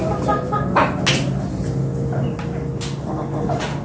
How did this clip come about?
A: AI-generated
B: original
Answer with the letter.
B